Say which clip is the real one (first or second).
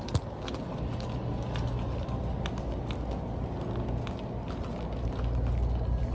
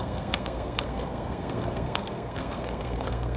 first